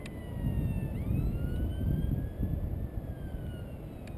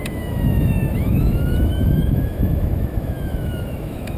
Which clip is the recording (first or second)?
first